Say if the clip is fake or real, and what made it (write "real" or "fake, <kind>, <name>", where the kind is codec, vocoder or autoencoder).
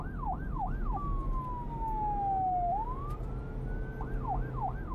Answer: real